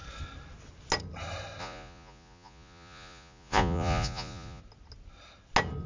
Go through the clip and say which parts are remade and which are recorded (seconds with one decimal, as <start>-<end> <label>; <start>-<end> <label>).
0.0-1.6 recorded; 1.6-4.6 remade; 4.6-5.9 recorded